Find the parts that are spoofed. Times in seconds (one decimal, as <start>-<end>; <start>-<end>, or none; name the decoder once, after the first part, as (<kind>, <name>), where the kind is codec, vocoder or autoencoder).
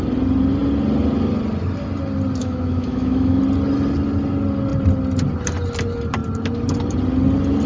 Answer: 2.4-3.4 (autoencoder, DAC-VAE)